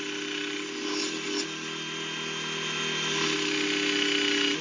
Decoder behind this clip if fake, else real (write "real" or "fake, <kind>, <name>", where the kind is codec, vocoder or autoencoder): real